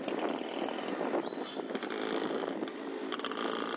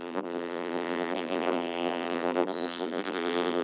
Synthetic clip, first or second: second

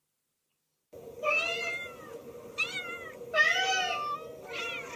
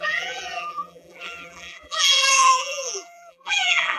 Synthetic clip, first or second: second